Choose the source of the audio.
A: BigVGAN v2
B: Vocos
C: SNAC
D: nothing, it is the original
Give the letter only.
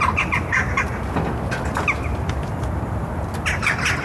D